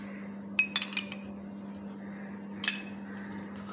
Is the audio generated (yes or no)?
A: no